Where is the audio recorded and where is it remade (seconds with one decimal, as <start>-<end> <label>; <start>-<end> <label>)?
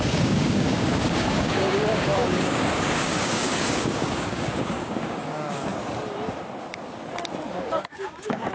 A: 0.0-5.7 remade; 5.7-7.5 recorded; 7.5-8.5 remade